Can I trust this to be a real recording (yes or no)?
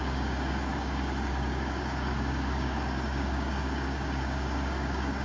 no